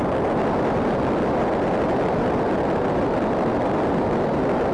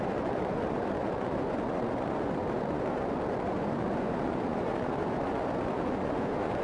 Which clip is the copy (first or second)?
second